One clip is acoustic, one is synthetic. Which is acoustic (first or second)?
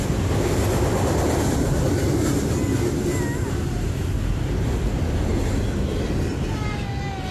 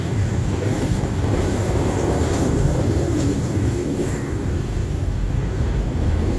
first